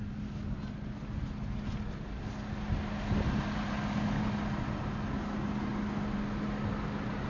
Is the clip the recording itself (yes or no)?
yes